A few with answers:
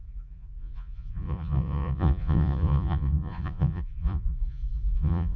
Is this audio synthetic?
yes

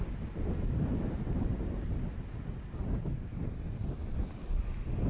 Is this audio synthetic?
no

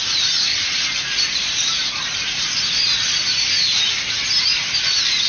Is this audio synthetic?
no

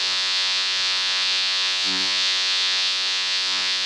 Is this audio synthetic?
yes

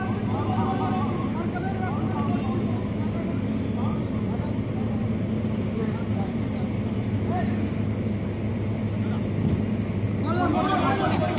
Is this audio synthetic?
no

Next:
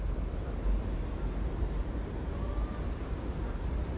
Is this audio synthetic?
no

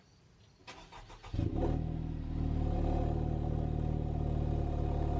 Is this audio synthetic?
no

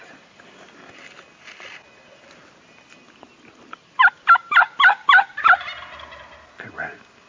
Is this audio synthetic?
no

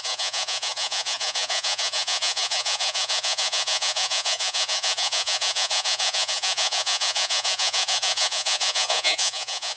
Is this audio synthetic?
yes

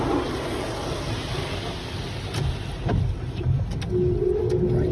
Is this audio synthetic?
no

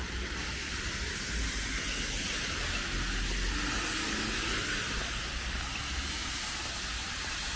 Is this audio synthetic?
no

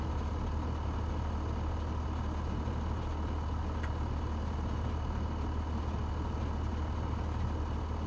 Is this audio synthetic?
no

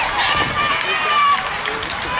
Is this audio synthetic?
no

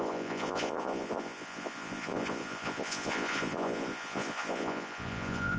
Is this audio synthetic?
yes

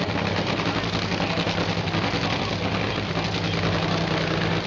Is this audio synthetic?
no